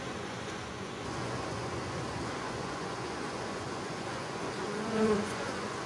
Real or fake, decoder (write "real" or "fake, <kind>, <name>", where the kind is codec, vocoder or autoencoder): fake, vocoder, Vocos